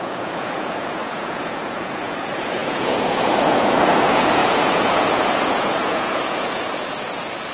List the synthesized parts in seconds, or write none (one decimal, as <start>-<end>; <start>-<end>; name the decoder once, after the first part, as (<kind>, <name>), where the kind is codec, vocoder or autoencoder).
0.0-7.5 (vocoder, Vocos)